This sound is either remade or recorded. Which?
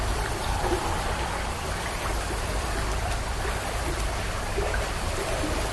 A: remade